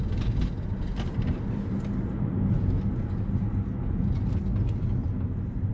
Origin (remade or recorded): recorded